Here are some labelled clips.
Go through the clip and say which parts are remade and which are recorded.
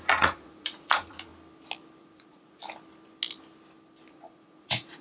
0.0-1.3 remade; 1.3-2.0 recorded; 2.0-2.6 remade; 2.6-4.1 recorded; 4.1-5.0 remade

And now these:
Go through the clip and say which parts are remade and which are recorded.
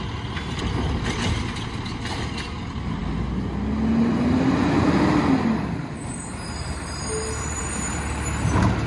0.0-8.9 recorded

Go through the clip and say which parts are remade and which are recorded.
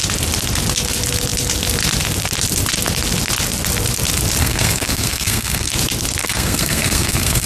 0.0-4.4 recorded; 4.4-5.7 remade; 5.7-6.2 recorded; 6.2-7.5 remade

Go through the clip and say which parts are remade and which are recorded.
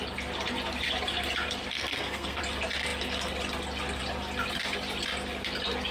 0.0-1.7 recorded; 1.7-2.4 remade; 2.4-5.9 recorded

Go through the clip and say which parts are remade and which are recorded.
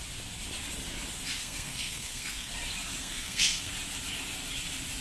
0.0-1.4 recorded; 1.4-2.5 remade; 2.5-3.0 recorded; 3.0-3.7 remade; 3.7-5.0 recorded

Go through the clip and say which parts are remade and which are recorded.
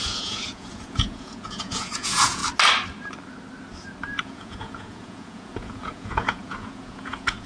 0.0-2.4 remade; 2.4-4.2 recorded; 4.2-7.5 remade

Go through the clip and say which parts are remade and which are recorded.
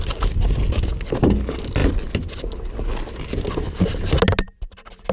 0.0-5.1 recorded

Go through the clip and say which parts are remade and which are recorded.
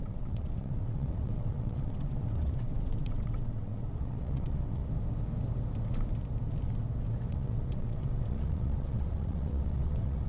0.0-4.8 remade; 4.8-7.3 recorded; 7.3-10.3 remade